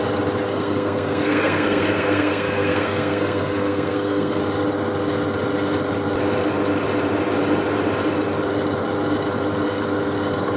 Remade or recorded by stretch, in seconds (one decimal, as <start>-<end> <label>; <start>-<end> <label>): 0.0-0.5 recorded; 0.5-4.4 remade; 4.4-10.6 recorded